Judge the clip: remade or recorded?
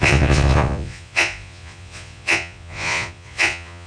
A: remade